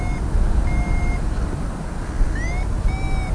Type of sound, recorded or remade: recorded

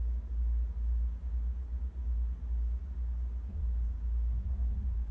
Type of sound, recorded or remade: recorded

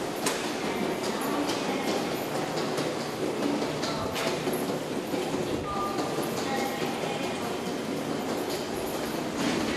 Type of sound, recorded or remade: recorded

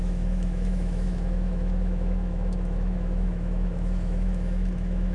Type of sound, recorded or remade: remade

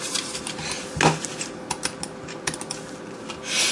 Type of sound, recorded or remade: recorded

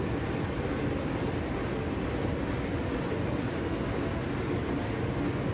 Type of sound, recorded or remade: recorded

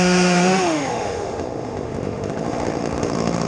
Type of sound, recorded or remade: remade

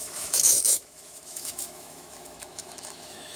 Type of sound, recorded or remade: remade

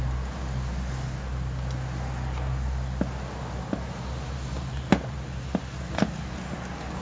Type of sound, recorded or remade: recorded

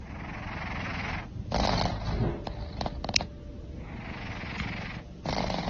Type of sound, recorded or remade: recorded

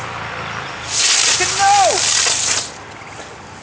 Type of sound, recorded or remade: recorded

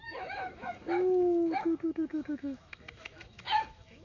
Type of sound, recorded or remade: remade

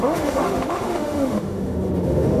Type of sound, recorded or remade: remade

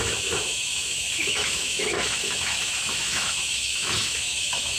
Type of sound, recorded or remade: remade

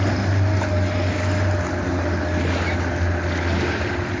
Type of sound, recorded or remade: recorded